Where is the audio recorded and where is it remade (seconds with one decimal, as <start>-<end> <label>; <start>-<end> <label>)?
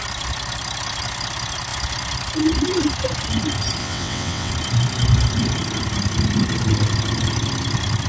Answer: 0.0-3.8 recorded; 3.8-4.5 remade; 4.5-8.1 recorded